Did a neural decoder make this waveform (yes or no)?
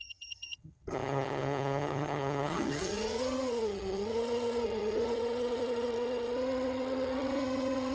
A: yes